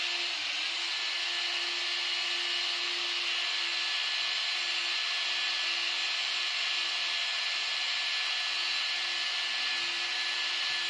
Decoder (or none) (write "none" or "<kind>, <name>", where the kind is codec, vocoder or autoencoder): none